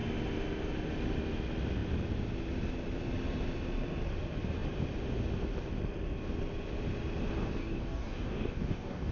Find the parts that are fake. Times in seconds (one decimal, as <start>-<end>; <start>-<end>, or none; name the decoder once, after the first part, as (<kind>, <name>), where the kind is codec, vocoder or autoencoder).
7.6-9.1 (codec, DAC)